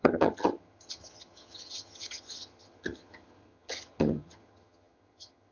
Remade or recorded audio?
remade